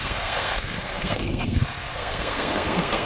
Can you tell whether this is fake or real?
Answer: fake